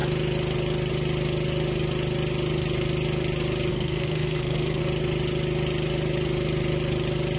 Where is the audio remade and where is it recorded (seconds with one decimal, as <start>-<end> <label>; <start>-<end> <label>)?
0.0-3.7 recorded; 3.7-4.8 remade; 4.8-7.4 recorded